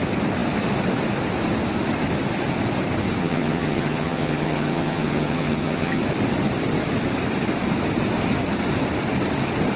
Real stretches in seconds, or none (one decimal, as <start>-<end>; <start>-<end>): 0.0-3.2; 6.0-9.8